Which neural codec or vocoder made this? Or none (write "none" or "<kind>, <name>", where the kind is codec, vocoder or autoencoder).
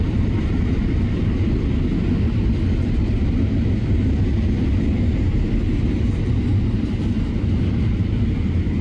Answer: none